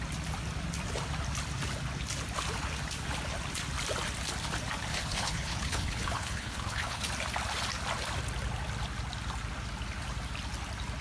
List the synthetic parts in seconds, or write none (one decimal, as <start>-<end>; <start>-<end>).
4.9-7.1